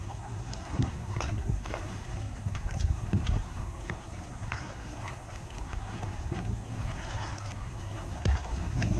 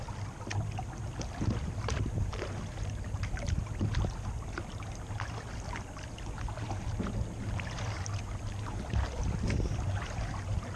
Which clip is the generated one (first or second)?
first